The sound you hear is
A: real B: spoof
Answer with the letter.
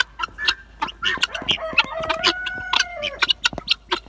A